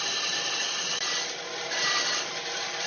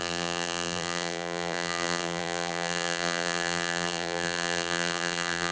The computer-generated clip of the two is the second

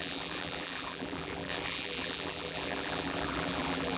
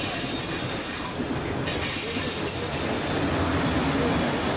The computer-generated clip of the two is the first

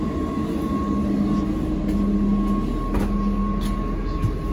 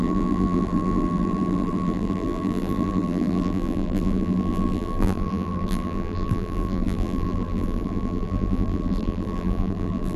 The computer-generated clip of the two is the second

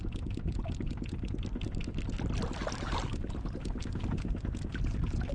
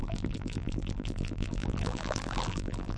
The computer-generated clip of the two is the second